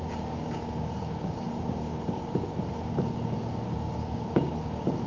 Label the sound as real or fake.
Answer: fake